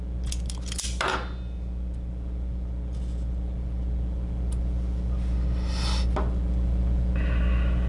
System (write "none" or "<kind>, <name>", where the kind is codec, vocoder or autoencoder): none